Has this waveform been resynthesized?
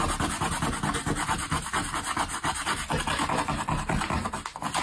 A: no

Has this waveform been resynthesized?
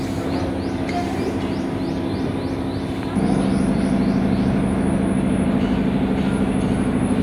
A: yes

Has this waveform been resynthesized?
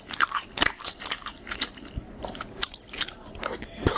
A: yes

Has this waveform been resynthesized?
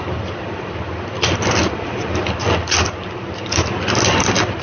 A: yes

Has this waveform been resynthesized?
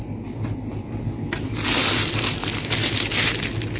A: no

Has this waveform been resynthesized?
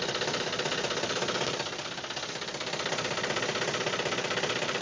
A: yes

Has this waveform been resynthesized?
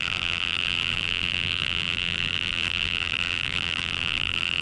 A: yes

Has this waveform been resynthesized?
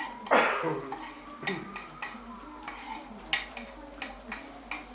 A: no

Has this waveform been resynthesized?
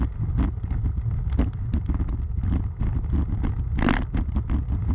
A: no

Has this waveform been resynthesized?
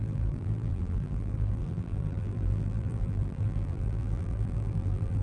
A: yes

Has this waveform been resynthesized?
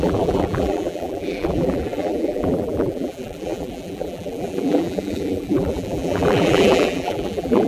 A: yes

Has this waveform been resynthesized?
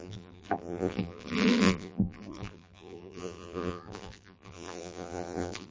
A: yes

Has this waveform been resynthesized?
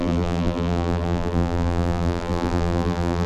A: yes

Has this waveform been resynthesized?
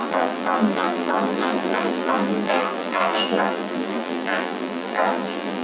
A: yes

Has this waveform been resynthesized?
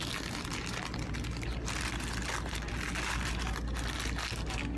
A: no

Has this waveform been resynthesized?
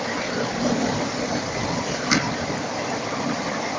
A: no